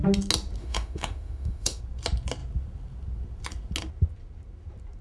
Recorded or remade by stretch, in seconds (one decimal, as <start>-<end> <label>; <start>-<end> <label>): 0.0-0.6 recorded; 0.6-1.8 remade; 1.8-5.0 recorded